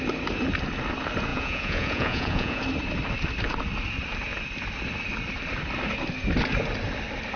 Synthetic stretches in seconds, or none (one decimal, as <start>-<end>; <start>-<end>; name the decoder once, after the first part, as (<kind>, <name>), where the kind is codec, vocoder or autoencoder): 1.3-2.6 (vocoder, Vocos)